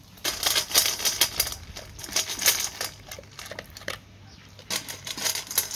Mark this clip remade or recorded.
recorded